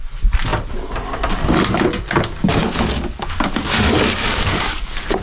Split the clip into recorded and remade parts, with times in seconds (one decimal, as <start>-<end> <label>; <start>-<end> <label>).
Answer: 0.0-2.6 recorded; 2.6-5.2 remade